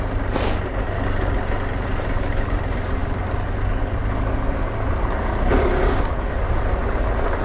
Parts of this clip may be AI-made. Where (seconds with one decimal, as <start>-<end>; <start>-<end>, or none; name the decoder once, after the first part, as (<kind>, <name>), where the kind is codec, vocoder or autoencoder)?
none